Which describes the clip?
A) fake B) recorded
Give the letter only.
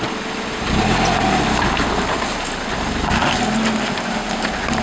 B